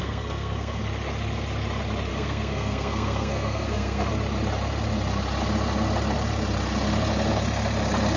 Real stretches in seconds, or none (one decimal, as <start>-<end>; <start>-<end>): 0.8-2.1; 4.1-8.2